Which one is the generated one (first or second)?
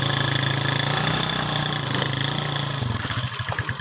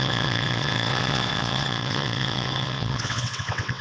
second